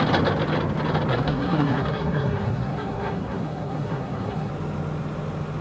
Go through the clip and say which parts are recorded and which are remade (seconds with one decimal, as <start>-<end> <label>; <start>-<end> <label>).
0.0-1.1 recorded; 1.1-4.5 remade; 4.5-5.6 recorded